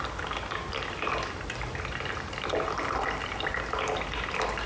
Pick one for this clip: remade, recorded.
recorded